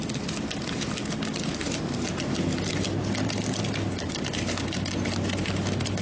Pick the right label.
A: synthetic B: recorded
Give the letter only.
B